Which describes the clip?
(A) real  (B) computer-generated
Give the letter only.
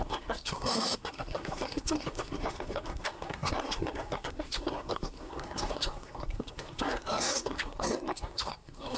B